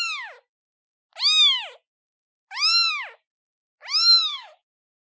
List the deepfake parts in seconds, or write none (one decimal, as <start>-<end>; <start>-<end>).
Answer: 4.3-5.2